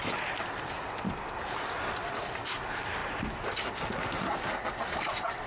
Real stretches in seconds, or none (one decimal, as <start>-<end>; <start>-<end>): 0.0-5.5

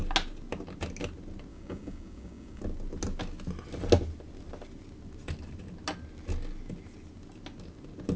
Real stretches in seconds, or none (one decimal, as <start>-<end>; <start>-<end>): 0.0-1.5; 2.6-8.2

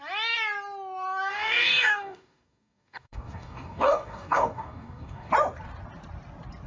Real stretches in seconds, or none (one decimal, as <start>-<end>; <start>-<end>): 0.0-1.3; 5.3-6.7

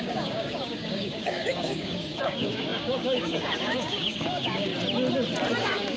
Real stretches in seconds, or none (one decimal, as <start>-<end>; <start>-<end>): 4.7-5.6

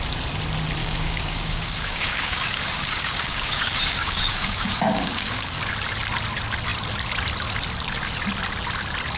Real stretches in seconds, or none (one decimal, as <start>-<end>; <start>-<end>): 0.0-0.8; 5.6-9.2

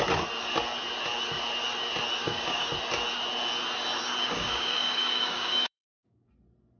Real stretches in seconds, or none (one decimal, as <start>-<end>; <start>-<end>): 0.0-2.2; 2.7-4.2; 6.3-6.8

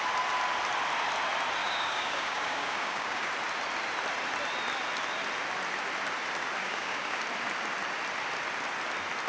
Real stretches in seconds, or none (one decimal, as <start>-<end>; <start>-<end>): 0.0-1.6; 3.3-6.6; 7.2-9.3

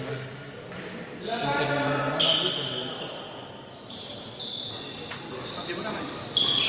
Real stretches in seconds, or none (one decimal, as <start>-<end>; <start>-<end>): 0.0-6.7